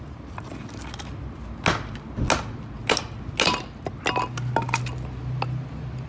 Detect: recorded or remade recorded